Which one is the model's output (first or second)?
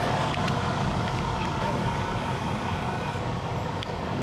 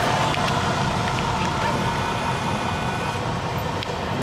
first